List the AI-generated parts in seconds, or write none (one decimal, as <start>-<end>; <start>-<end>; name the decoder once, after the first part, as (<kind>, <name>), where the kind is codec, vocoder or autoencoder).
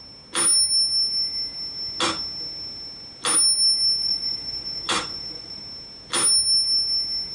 4.0-5.6 (vocoder, Vocos)